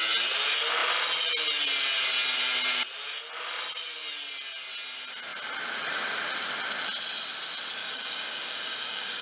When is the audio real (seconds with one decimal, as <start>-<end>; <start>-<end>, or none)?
0.0-7.8